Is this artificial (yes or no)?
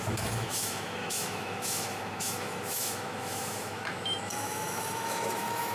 yes